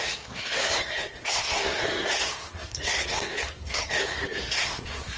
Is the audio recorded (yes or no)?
no